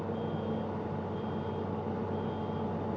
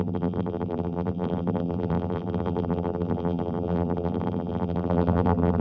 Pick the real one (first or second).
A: first